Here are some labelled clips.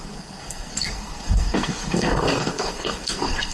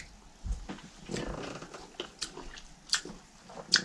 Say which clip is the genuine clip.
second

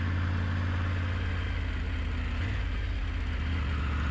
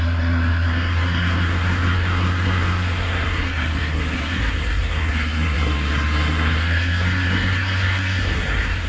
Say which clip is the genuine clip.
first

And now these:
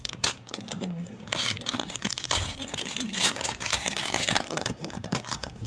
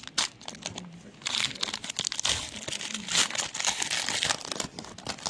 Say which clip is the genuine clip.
second